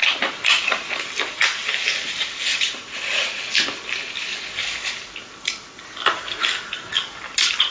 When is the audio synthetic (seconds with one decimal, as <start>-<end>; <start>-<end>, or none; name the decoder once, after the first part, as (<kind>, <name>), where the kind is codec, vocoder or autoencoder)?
2.5-3.4 (vocoder, Vocos)